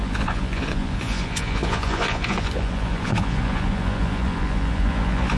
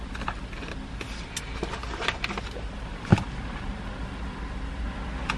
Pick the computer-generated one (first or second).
first